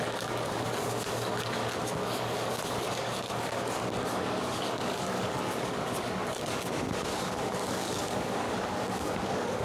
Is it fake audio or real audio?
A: fake